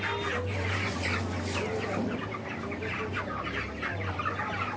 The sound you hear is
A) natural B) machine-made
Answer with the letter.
A